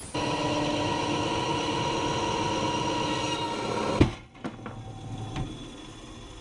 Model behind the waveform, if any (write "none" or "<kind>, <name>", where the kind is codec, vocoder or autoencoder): none